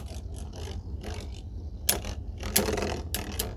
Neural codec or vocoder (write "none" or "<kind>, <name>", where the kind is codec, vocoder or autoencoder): none